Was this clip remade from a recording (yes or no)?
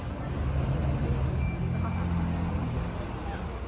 no